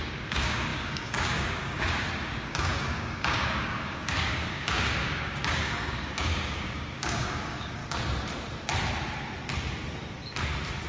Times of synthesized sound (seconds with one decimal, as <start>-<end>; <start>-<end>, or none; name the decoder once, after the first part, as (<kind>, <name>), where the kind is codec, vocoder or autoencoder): 0.0-7.8 (codec, DAC)